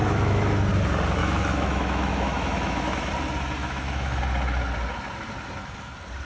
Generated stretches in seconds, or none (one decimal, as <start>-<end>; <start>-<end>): 0.0-0.7; 1.2-3.1; 3.6-4.2